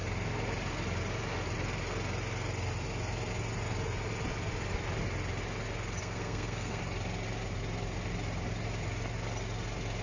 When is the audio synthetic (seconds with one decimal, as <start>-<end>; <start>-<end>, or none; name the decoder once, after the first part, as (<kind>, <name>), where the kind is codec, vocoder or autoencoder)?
6.0-6.8 (codec, SNAC)